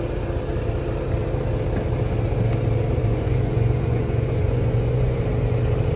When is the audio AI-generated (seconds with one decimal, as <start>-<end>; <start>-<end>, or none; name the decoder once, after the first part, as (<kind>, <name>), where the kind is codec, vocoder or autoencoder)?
3.0-5.2 (vocoder, Vocos)

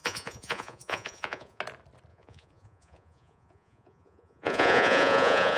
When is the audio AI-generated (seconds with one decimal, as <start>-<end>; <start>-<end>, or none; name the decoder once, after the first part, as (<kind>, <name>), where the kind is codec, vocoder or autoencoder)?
0.0-1.6 (vocoder, Vocos); 2.1-5.6

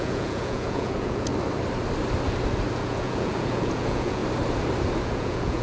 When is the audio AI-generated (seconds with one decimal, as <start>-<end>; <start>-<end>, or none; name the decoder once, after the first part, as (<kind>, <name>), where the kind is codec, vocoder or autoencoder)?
0.0-1.3 (vocoder, Vocos); 2.7-4.2; 5.0-5.6